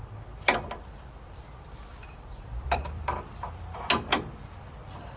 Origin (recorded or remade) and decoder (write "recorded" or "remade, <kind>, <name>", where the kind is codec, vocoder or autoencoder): remade, vocoder, BigVGAN v2